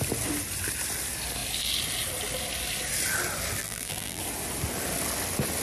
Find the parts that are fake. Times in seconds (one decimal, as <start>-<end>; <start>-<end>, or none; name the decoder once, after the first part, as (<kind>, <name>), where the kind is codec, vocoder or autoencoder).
3.6-4.2 (vocoder, BigVGAN v2)